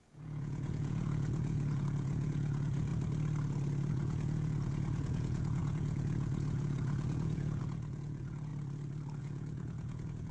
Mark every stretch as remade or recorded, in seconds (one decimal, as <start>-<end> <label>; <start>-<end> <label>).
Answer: 0.0-2.9 remade; 2.9-3.9 recorded; 3.9-8.5 remade; 8.5-9.2 recorded; 9.2-10.3 remade